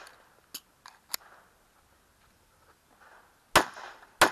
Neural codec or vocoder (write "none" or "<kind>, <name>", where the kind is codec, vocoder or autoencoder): none